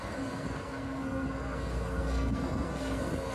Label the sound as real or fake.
fake